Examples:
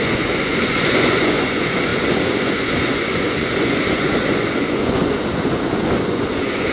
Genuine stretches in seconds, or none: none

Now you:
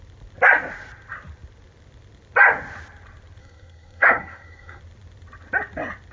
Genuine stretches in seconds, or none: 0.0-3.4; 4.8-6.1

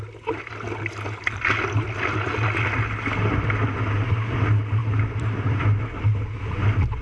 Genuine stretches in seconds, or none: 0.0-7.0

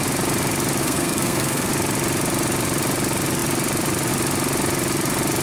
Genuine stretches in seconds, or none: 0.0-0.8; 1.7-5.4

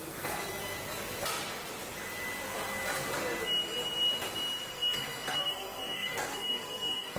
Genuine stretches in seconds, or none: 0.6-4.7

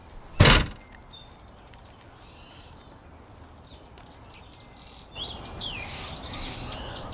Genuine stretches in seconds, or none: 0.0-7.1